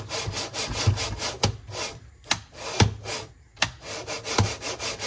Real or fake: real